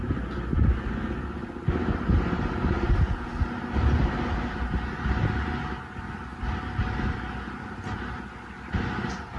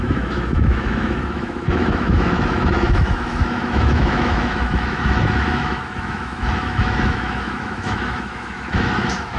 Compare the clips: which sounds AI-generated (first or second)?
second